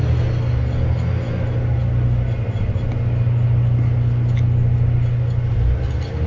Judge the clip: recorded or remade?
recorded